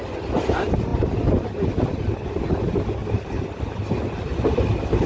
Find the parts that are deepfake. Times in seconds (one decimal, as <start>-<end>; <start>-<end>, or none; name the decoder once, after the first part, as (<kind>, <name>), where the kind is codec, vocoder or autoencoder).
none